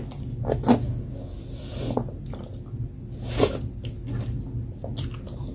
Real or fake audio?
real